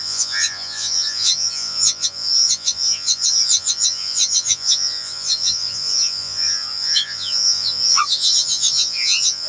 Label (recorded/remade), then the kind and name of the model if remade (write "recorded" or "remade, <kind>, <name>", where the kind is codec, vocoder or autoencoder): remade, vocoder, Vocos